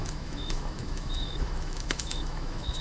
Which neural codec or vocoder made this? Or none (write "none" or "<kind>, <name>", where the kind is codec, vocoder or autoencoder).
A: autoencoder, DAC-VAE